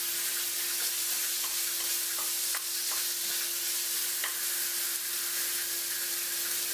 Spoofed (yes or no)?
no